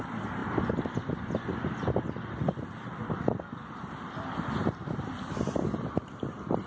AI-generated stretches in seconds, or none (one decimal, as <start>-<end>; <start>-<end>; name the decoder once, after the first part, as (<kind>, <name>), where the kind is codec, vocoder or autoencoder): none